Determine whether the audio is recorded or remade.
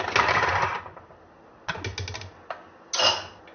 recorded